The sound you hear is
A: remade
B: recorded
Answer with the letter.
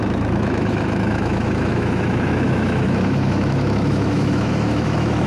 A